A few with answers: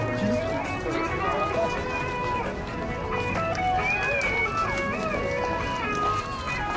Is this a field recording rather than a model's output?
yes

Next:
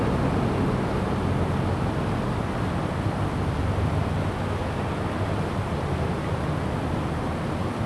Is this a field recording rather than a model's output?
yes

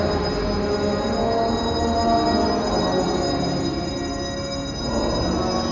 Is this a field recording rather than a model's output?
yes